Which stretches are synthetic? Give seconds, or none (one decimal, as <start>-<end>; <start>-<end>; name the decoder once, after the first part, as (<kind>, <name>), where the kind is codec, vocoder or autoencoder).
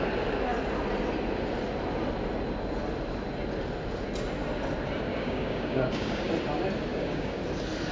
5.1-6.3 (codec, DAC); 6.9-7.4